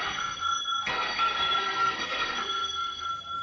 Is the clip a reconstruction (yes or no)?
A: yes